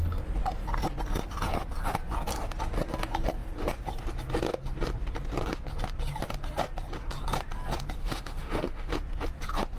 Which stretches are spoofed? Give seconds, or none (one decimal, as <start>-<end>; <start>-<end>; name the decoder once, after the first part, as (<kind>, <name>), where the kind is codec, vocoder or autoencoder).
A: 8.0-8.9 (autoencoder, DAC-VAE)